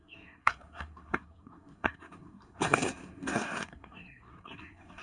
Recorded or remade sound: remade